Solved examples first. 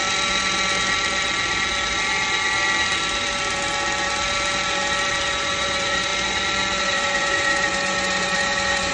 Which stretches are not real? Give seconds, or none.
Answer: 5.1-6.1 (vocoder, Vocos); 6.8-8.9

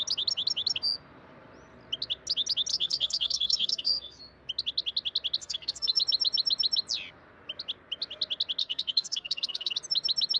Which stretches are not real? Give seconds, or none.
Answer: 2.7-4.2 (codec, SNAC); 5.4-6.0; 8.6-9.7